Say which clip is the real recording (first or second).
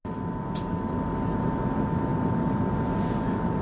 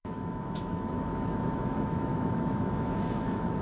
first